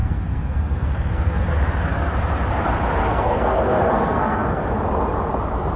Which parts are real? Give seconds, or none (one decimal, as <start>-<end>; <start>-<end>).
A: 1.5-3.0; 4.6-5.8